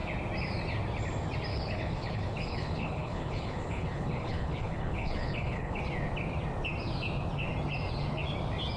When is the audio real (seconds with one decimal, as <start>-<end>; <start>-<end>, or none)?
0.0-1.5; 5.8-8.8